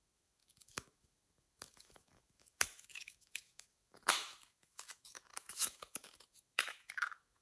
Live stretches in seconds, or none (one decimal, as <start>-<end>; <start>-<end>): none